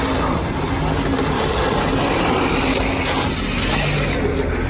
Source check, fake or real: real